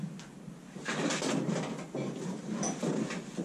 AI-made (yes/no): no